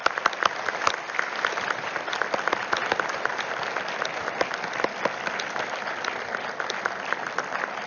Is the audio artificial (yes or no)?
no